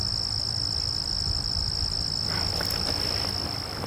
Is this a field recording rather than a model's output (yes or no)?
no